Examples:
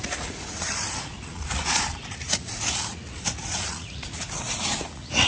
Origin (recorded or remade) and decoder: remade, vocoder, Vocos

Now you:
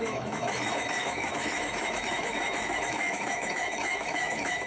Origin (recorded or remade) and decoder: remade, autoencoder, DAC-VAE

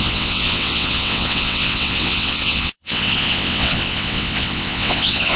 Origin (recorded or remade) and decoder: remade, vocoder, WaveNeXt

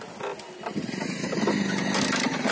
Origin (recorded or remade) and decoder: recorded